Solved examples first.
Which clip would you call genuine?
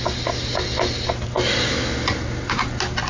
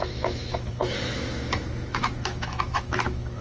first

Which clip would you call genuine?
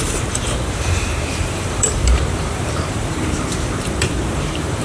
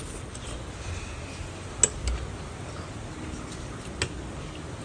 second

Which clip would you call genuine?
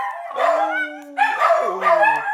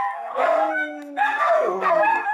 first